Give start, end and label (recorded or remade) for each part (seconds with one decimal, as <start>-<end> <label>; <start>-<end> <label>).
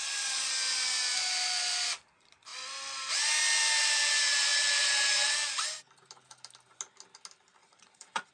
0.0-0.5 remade; 0.5-7.6 recorded; 7.6-8.3 remade